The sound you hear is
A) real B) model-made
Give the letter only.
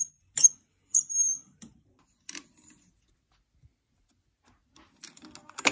A